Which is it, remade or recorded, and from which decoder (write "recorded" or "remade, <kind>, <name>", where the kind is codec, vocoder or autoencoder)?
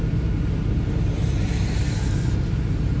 recorded